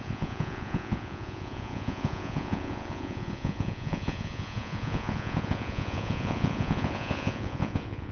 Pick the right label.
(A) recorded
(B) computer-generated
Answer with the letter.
B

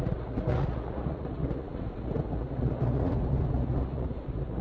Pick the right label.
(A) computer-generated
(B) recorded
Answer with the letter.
A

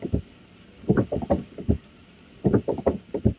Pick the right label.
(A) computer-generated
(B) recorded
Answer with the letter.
B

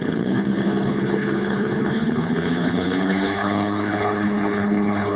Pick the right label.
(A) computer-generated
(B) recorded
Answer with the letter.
A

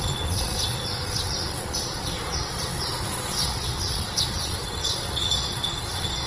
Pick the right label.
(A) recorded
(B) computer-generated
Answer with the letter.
B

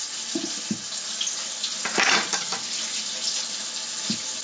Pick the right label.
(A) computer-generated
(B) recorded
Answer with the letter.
B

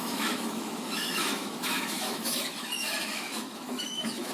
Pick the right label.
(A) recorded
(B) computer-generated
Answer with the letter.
B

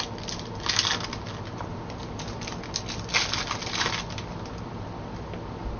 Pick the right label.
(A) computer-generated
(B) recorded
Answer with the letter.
B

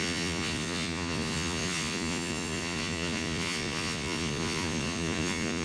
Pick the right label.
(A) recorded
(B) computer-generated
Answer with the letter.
B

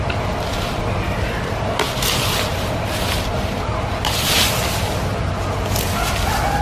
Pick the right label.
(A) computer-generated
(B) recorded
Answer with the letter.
B